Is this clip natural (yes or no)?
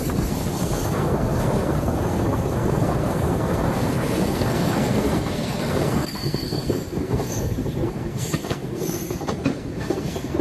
no